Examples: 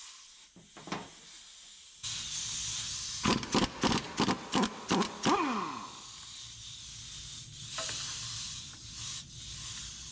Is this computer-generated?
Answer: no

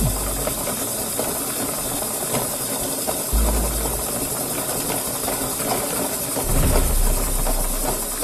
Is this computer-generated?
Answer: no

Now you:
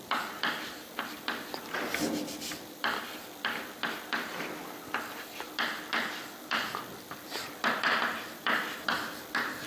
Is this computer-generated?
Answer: yes